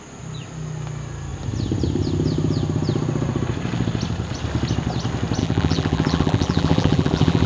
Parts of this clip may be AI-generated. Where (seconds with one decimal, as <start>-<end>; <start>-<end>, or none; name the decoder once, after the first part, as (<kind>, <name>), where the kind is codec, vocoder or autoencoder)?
5.4-7.5 (vocoder, BigVGAN v2)